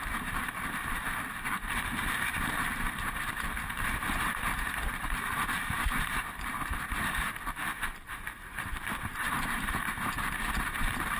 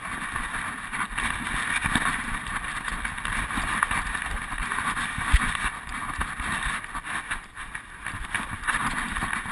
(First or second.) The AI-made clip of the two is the first